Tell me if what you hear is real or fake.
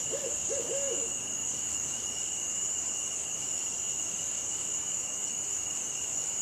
fake